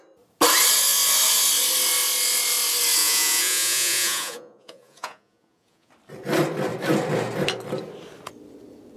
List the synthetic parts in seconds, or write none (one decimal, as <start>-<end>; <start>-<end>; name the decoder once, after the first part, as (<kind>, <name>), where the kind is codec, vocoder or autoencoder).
3.0-5.9 (vocoder, Vocos)